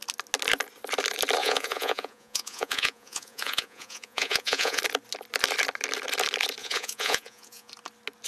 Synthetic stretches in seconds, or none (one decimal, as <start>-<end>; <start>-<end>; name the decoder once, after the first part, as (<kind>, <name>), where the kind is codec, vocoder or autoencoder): 1.4-4.8 (vocoder, Vocos); 6.6-7.7